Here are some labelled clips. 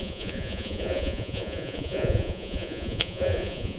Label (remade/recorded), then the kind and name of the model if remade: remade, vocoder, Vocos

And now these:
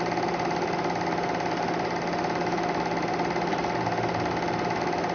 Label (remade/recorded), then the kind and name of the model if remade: recorded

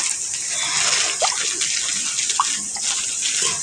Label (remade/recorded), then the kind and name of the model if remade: recorded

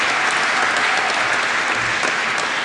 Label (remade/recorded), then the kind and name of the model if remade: recorded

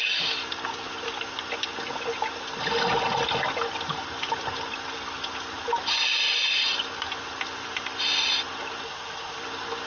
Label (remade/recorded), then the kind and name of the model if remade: recorded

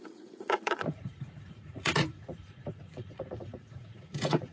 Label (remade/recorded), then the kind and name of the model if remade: remade, vocoder, Vocos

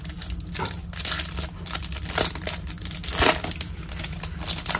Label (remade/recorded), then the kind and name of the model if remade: recorded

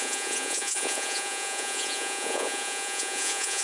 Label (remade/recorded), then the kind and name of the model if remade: remade, vocoder, Vocos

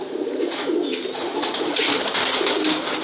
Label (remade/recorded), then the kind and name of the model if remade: recorded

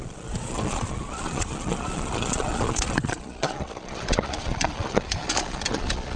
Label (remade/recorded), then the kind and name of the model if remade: remade, vocoder, Vocos